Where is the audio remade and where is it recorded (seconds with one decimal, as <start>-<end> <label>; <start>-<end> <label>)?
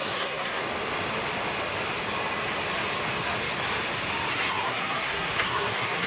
0.0-0.6 remade; 0.6-4.3 recorded; 4.3-6.1 remade